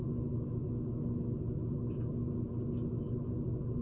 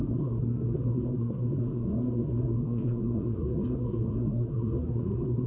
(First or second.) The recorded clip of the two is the first